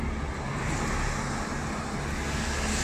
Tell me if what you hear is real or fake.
real